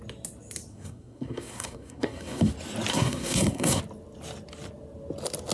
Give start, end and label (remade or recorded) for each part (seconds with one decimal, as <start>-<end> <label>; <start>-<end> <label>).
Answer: 0.0-0.7 recorded; 0.7-2.5 remade; 2.5-2.9 recorded; 2.9-3.8 remade; 3.8-5.5 recorded